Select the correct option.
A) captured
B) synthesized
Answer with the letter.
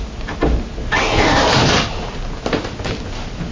A